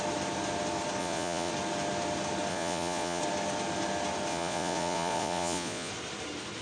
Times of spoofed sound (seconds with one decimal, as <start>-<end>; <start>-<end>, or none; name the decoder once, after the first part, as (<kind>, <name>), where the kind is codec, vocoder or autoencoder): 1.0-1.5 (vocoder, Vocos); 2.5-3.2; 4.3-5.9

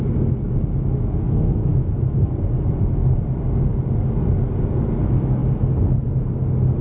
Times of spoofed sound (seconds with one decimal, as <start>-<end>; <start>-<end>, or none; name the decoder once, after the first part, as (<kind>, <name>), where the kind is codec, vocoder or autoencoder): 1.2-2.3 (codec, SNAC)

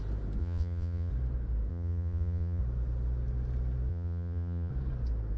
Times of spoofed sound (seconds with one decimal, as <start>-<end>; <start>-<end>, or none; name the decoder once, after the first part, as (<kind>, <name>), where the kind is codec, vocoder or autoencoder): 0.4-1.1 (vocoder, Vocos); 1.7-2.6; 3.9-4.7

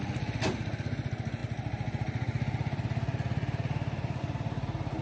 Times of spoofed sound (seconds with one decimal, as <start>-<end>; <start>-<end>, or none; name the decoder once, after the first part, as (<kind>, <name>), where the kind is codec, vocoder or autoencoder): none

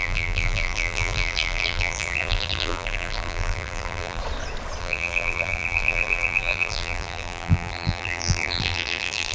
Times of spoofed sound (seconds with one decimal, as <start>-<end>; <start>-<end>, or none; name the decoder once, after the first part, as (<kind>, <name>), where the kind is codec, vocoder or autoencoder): 0.0-4.2 (vocoder, BigVGAN v2); 4.8-9.3

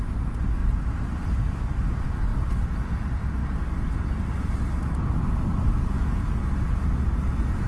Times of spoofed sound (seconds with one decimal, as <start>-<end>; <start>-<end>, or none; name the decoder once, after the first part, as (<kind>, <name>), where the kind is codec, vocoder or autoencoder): 0.6-1.4 (vocoder, BigVGAN v2)

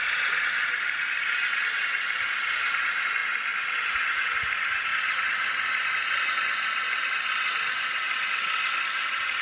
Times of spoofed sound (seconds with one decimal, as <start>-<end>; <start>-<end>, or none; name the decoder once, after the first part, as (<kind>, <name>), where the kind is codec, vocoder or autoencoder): 0.0-3.2 (vocoder, BigVGAN v2); 3.9-4.9